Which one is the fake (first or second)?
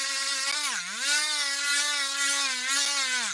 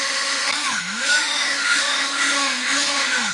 second